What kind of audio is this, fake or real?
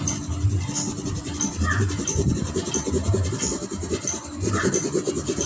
real